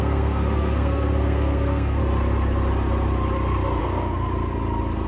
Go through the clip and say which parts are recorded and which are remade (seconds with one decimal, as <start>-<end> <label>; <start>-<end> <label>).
0.0-2.0 remade; 2.0-3.8 recorded; 3.8-4.3 remade; 4.3-5.1 recorded